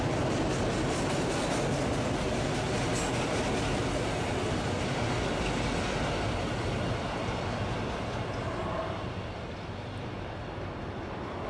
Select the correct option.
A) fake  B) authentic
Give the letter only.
B